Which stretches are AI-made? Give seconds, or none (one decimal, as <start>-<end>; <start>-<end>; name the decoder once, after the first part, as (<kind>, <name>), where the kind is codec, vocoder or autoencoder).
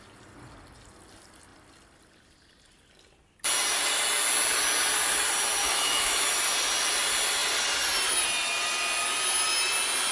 5.6-6.3 (autoencoder, DAC-VAE)